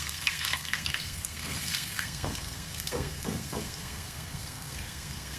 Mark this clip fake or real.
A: fake